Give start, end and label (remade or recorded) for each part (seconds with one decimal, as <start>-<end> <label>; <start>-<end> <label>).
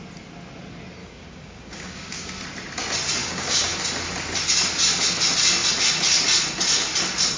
0.0-1.0 recorded; 1.0-2.3 remade; 2.3-3.2 recorded; 3.2-3.8 remade; 3.8-7.4 recorded